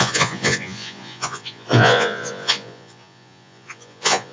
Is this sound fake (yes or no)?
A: yes